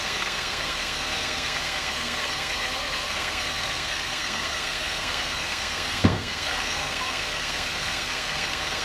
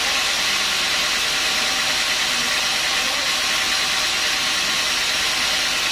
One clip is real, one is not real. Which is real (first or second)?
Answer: second